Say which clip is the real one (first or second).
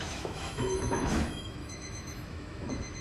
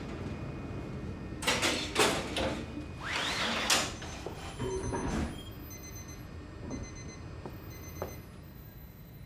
second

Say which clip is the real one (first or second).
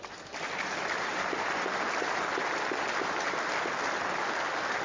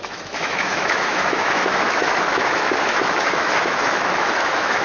first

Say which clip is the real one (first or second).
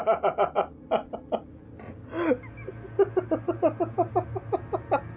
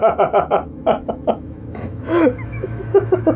first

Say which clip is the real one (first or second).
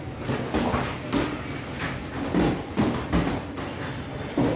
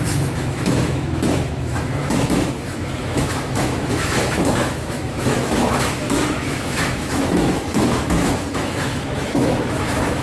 first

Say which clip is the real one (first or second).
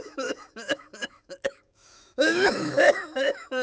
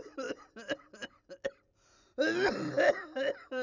second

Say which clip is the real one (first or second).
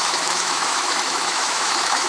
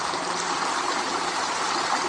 second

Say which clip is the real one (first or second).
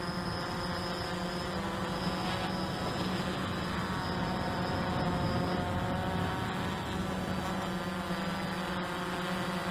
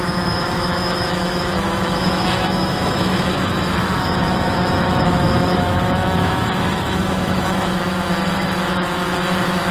first